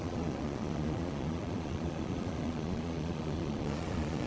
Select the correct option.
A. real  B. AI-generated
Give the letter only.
B